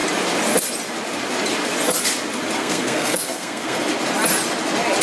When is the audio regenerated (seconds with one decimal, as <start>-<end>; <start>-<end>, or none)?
2.6-3.8